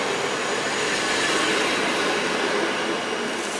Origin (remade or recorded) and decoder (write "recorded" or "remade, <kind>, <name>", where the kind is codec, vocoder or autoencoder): recorded